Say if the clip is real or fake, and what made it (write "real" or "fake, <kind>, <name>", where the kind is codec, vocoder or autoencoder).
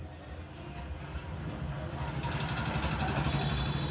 real